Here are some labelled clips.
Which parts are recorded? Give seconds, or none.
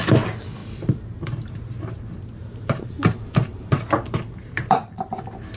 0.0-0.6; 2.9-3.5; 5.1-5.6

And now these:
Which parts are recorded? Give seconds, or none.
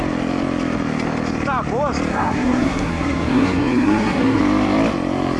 0.0-2.1; 4.4-5.4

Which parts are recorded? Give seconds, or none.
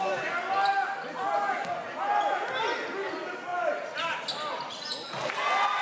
0.0-3.5; 4.6-5.8